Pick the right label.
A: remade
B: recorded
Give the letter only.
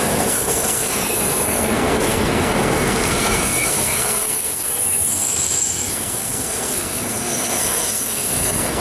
A